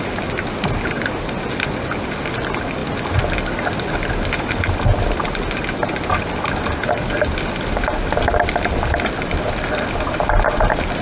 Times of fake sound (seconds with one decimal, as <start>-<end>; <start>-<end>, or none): none